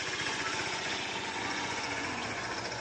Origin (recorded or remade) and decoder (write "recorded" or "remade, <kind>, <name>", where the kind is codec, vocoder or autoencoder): remade, vocoder, Vocos